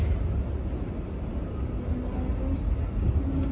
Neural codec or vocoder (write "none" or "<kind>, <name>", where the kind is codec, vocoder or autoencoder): none